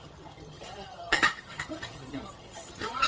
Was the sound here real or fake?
fake